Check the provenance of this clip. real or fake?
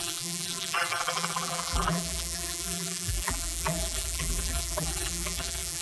fake